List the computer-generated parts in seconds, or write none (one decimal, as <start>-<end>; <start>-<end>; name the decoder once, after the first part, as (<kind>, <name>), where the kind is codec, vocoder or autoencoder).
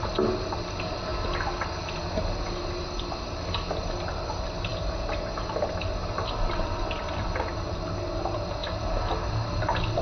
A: none